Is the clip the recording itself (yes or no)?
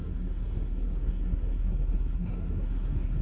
no